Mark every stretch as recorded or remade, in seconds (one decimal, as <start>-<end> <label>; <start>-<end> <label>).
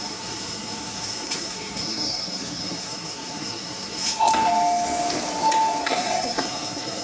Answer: 0.0-4.3 remade; 4.3-5.8 recorded; 5.8-7.0 remade